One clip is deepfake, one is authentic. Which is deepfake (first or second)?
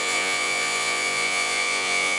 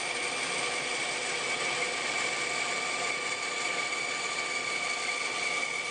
first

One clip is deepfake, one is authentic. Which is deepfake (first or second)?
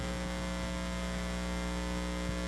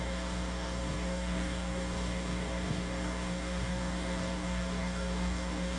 second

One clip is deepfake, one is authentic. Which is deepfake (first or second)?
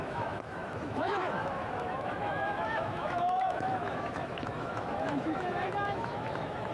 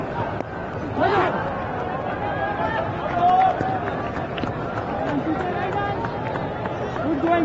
first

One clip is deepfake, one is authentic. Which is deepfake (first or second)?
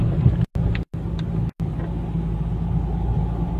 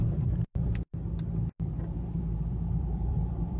second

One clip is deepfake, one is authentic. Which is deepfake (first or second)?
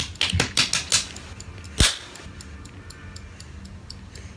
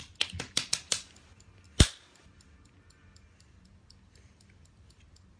second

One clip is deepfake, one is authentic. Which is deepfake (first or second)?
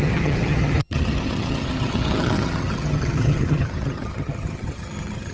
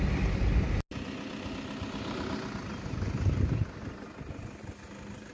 first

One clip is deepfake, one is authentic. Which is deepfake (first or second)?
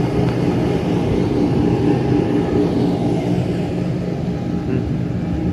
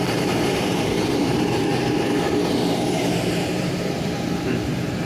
second